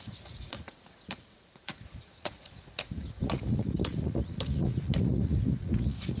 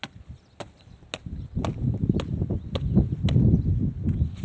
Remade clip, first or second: first